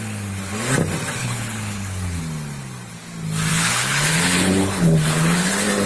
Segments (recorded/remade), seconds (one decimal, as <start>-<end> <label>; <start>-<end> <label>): 0.0-1.2 recorded; 1.2-2.2 remade; 2.2-3.5 recorded; 3.5-5.5 remade; 5.5-5.9 recorded